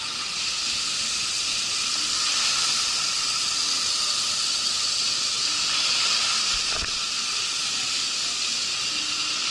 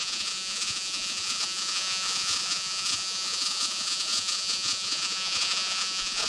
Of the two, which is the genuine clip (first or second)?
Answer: first